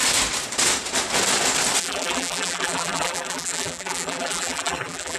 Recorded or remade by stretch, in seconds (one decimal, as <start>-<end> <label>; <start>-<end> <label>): 0.0-1.8 recorded; 1.8-5.2 remade